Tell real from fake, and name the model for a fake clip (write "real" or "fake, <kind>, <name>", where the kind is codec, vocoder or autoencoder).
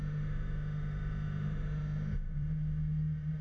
fake, autoencoder, DAC-VAE